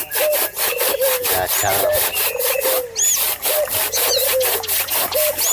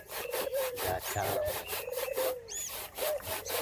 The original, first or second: first